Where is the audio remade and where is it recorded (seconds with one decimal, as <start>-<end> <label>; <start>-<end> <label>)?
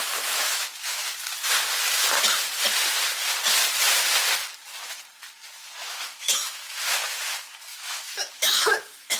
0.0-1.0 remade; 1.0-5.9 recorded; 5.9-9.2 remade